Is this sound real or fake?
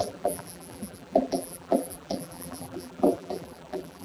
fake